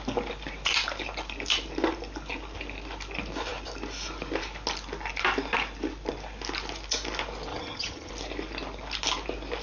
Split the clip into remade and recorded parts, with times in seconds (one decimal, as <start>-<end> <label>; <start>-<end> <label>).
0.0-7.5 recorded; 7.5-8.1 remade; 8.1-9.6 recorded